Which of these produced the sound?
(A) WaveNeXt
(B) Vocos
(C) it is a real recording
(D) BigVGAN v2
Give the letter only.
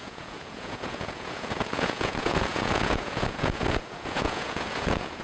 B